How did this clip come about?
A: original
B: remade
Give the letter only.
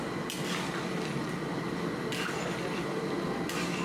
A